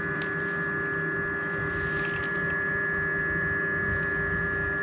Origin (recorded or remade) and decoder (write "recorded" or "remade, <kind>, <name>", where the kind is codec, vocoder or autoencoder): recorded